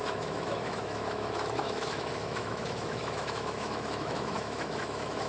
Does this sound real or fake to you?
fake